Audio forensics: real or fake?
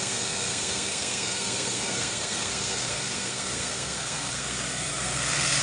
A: fake